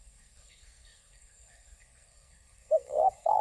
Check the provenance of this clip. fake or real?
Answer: fake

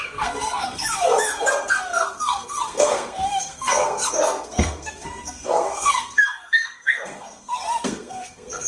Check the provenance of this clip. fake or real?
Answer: fake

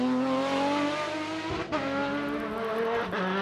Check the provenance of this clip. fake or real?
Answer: real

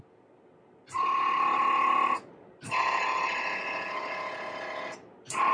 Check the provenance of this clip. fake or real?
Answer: real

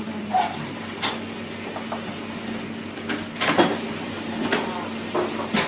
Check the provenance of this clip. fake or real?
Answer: real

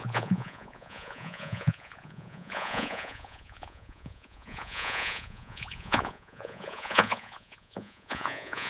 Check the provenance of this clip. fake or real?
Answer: fake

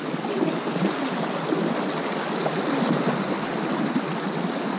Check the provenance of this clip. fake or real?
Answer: real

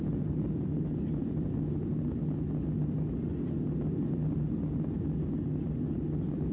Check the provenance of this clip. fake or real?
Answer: real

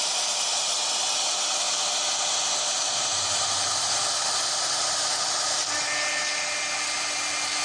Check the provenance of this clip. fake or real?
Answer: real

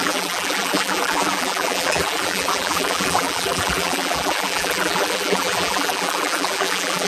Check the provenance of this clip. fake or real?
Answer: fake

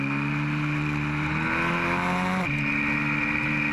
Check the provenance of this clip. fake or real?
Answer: real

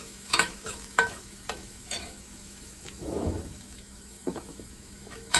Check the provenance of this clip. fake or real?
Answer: fake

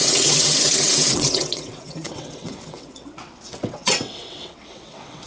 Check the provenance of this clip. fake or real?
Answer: fake